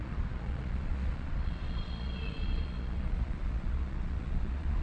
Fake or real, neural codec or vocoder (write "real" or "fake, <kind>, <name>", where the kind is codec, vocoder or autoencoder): fake, vocoder, Vocos